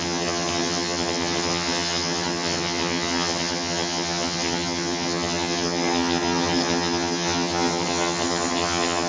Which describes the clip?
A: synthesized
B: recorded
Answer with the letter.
A